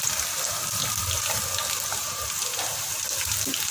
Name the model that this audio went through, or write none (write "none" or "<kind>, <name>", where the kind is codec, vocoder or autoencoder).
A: none